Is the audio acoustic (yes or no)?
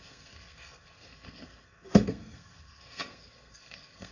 no